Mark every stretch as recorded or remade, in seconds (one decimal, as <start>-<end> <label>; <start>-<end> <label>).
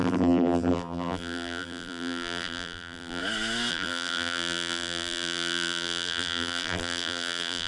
0.0-3.2 remade; 3.2-3.7 recorded; 3.7-7.7 remade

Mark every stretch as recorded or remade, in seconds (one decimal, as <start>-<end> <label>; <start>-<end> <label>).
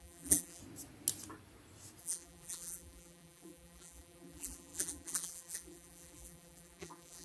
0.0-0.6 remade; 0.6-2.0 recorded; 2.0-7.2 remade